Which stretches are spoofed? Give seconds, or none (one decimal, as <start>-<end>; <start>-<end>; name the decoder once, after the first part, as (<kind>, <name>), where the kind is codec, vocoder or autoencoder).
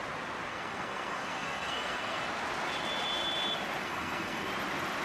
0.5-2.2 (codec, SNAC); 3.8-4.5